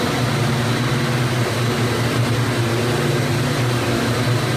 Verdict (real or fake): real